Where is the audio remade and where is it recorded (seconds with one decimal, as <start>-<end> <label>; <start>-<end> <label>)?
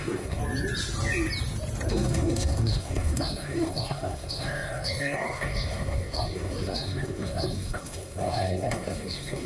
0.0-0.4 remade; 0.4-1.9 recorded; 1.9-9.5 remade